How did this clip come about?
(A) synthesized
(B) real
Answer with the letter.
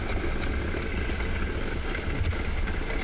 B